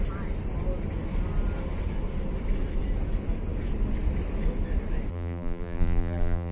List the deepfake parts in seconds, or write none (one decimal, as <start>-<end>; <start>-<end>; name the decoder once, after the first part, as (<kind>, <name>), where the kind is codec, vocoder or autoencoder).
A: 5.1-6.5 (vocoder, BigVGAN v2)